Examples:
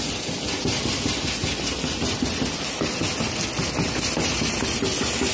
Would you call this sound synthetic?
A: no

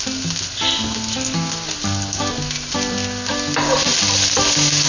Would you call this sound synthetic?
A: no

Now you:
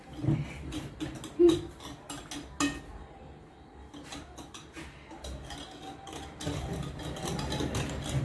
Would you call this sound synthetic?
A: no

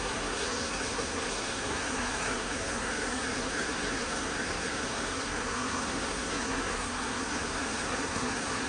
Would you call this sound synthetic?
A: yes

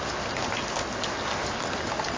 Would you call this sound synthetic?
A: no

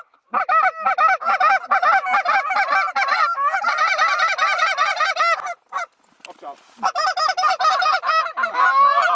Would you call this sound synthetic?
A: no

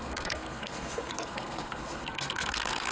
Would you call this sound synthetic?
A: yes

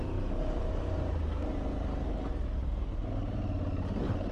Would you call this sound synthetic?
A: no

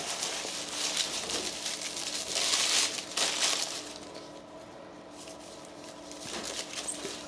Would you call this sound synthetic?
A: no